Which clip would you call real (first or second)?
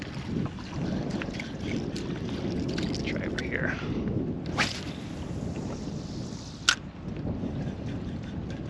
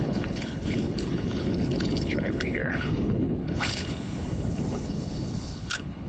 first